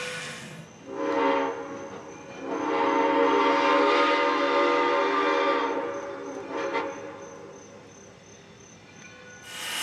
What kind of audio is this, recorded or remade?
recorded